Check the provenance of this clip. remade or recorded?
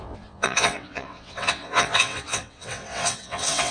remade